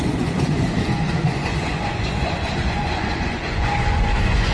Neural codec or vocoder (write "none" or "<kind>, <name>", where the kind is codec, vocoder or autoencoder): vocoder, Vocos